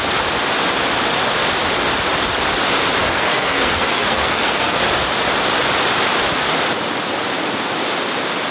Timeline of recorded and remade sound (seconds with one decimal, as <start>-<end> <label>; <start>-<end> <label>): 0.0-3.0 recorded; 3.0-4.8 remade; 4.8-8.5 recorded

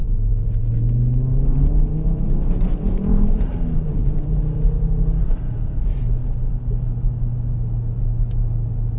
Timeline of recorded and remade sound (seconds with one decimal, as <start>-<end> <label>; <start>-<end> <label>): 0.0-9.0 recorded